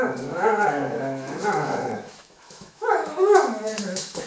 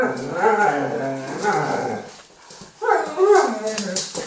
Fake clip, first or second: first